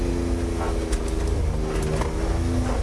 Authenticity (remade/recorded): recorded